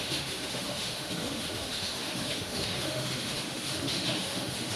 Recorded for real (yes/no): no